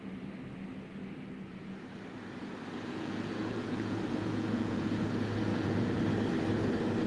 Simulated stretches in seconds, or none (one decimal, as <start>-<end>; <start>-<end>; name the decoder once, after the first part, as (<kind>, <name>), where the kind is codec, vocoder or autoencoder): 2.9-5.0 (vocoder, Vocos); 5.5-6.0